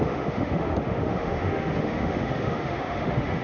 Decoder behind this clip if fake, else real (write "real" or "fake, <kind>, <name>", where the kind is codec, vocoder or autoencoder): fake, autoencoder, DAC-VAE